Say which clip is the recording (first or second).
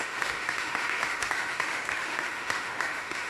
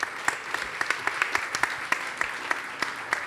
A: second